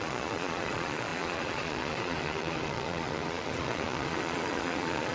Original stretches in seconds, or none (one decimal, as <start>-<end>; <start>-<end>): none